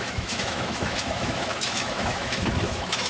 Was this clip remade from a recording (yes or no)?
yes